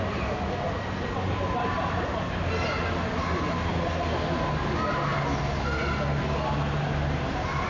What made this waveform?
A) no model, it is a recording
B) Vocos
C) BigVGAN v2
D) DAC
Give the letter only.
A